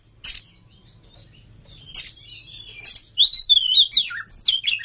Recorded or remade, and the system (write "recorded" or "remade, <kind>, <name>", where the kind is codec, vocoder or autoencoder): remade, vocoder, BigVGAN v2